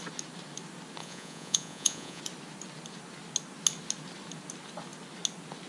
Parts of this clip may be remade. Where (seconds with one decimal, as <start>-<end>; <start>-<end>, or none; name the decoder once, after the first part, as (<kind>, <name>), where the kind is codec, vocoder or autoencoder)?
1.0-2.2 (vocoder, Vocos)